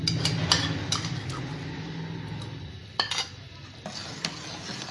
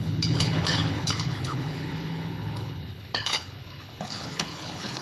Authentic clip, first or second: first